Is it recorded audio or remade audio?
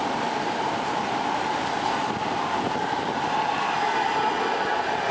recorded